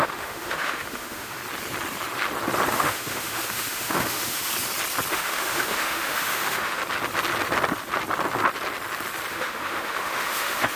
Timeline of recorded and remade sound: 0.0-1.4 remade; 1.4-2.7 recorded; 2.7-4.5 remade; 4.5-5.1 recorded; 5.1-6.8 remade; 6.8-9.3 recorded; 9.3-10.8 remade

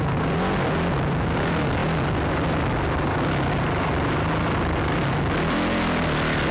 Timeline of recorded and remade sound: 0.0-6.5 recorded

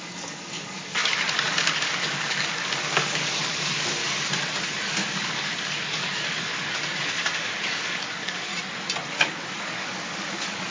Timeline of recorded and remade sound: 0.0-4.0 remade; 4.0-4.6 recorded; 4.6-8.5 remade; 8.5-9.1 recorded; 9.1-10.7 remade

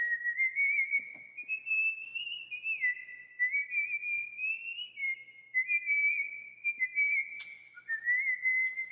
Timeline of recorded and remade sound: 0.0-1.7 recorded; 1.7-2.4 remade; 2.4-4.7 recorded; 4.7-5.5 remade; 5.5-6.6 recorded; 6.6-7.6 remade; 7.6-8.9 recorded